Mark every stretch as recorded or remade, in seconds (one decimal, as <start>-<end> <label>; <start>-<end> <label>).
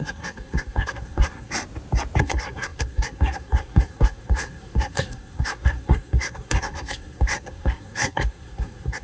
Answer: 0.0-1.5 remade; 1.5-2.2 recorded; 2.2-9.0 remade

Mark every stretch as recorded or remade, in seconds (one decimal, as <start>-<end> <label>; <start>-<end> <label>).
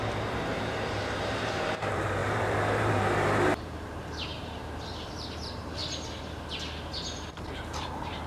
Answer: 0.0-4.6 remade; 4.6-5.1 recorded; 5.1-5.8 remade; 5.8-7.3 recorded; 7.3-8.3 remade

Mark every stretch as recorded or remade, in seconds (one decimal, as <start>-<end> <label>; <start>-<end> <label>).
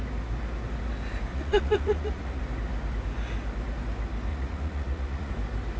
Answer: 0.0-1.3 recorded; 1.3-2.4 remade; 2.4-4.3 recorded; 4.3-5.3 remade; 5.3-5.8 recorded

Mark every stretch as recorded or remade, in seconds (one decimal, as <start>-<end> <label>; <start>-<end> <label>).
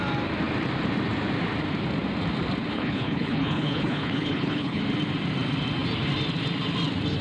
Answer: 0.0-2.7 recorded; 2.7-4.8 remade; 4.8-7.2 recorded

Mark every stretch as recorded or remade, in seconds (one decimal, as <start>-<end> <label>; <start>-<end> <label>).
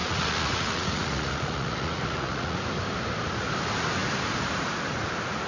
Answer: 0.0-2.6 remade; 2.6-5.5 recorded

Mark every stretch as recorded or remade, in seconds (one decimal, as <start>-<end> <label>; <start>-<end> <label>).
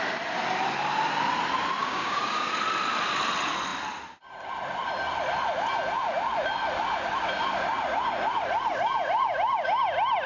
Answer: 0.0-1.8 recorded; 1.8-2.5 remade; 2.5-10.3 recorded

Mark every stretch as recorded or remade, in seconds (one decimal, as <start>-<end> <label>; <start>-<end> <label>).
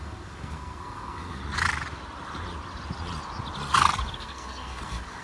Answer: 0.0-1.4 remade; 1.4-4.1 recorded; 4.1-5.2 remade